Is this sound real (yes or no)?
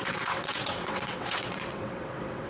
no